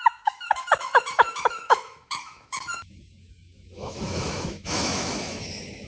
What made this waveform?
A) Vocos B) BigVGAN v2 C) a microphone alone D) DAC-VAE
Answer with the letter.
D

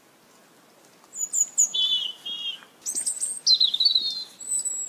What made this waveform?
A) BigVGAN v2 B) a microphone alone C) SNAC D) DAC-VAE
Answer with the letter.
B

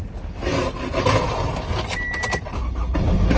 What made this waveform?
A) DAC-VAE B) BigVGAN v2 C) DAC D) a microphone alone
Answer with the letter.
D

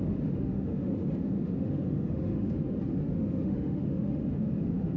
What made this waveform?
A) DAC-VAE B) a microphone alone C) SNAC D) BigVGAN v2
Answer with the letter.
A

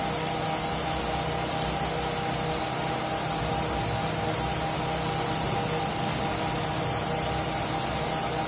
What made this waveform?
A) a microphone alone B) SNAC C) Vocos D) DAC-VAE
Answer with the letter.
A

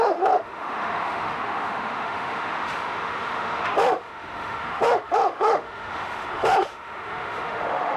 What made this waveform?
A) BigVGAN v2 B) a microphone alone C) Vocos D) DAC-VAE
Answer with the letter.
D